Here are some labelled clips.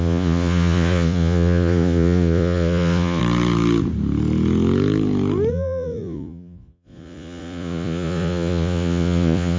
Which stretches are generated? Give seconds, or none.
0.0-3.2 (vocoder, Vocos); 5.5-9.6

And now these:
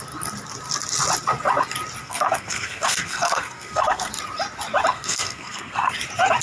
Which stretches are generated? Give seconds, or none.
2.0-4.1 (codec, SNAC); 4.9-5.9

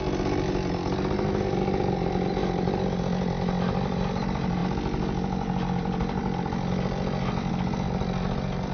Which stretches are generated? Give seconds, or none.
none

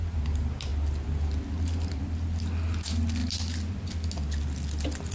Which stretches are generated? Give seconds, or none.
none

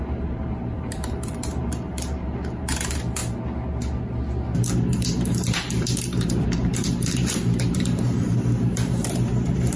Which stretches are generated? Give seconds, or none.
0.0-3.2 (vocoder, BigVGAN v2); 4.9-9.8

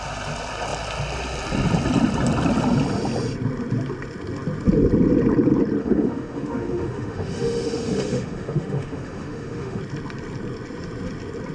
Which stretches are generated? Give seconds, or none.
5.8-9.8 (autoencoder, DAC-VAE)